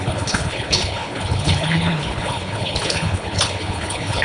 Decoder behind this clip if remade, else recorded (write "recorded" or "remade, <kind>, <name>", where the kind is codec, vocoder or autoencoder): remade, codec, HILCodec